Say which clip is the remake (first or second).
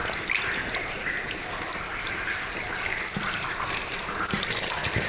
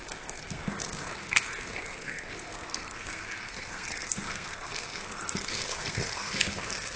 second